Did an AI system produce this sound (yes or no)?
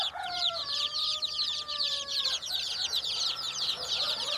yes